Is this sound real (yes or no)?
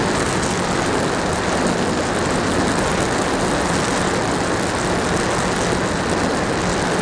yes